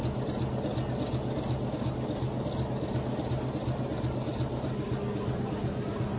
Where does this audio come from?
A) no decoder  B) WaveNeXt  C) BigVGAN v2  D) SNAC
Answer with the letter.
A